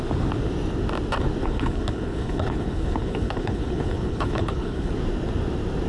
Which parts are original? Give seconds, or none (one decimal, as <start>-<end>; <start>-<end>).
0.0-1.4; 4.9-5.9